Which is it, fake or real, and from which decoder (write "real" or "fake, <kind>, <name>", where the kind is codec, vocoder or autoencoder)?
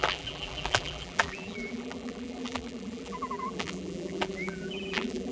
fake, vocoder, BigVGAN v2